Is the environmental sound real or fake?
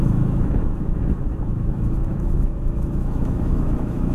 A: fake